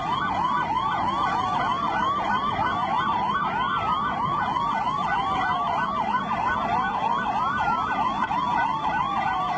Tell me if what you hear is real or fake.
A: real